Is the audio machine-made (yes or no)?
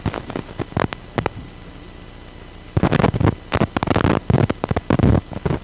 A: no